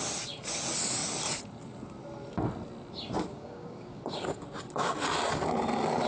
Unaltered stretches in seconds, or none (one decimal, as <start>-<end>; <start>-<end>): 0.0-3.3; 4.4-6.1